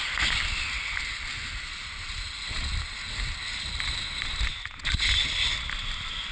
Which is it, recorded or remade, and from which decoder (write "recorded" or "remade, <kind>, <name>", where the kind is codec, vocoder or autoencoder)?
recorded